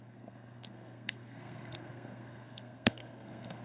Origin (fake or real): fake